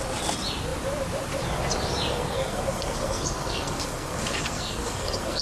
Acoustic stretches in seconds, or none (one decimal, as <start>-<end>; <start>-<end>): 0.0-2.1